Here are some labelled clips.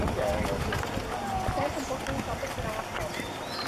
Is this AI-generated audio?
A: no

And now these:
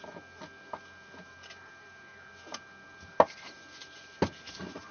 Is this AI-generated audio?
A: no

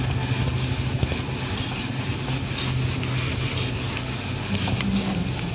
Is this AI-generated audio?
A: no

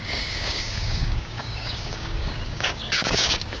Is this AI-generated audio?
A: yes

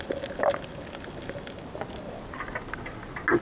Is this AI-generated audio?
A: no